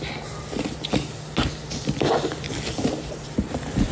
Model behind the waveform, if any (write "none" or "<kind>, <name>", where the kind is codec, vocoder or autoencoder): none